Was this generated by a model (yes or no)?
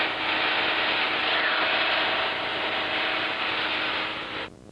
no